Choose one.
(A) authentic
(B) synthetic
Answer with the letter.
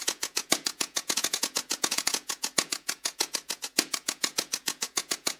B